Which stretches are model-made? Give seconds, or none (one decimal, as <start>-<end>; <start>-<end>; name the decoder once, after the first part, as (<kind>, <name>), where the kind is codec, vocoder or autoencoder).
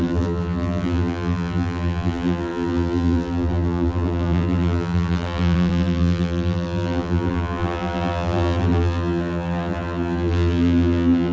0.0-11.3 (vocoder, BigVGAN v2)